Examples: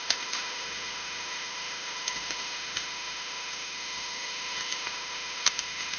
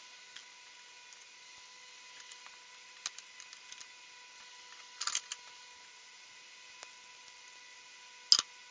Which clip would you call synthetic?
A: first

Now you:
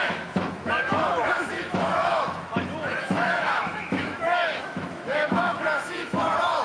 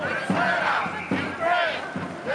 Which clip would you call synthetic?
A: first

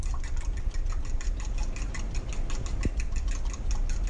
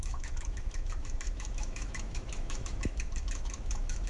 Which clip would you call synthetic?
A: second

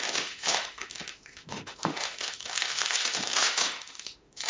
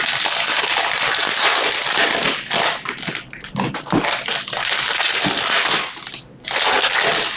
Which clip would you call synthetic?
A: first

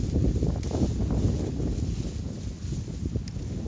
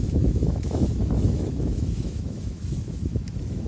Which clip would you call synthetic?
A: second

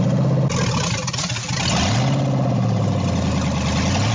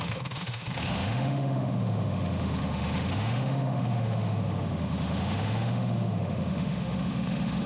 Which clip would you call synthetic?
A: second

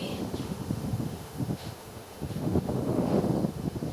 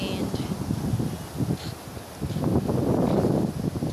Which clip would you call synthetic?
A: first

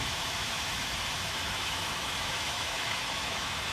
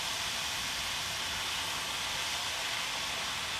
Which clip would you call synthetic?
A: first